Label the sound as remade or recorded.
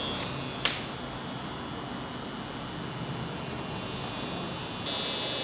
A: recorded